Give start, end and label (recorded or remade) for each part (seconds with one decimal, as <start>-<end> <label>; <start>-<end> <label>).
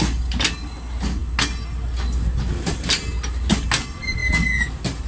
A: 0.0-5.1 recorded